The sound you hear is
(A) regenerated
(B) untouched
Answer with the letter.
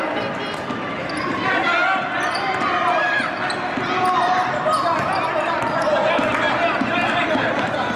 B